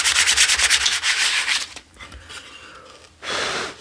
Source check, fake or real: real